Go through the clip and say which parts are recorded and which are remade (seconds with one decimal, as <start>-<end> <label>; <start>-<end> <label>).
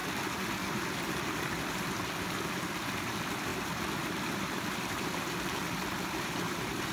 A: 0.0-3.5 recorded; 3.5-6.9 remade